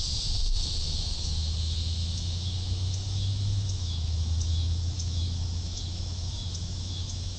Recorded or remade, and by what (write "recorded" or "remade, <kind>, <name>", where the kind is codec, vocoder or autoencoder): remade, autoencoder, DAC-VAE